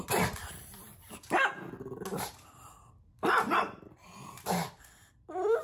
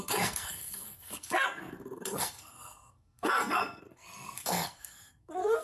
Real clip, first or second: first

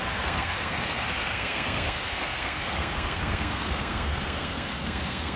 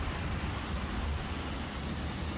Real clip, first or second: second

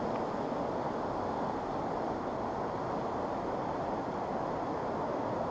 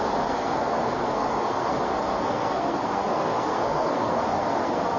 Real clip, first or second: first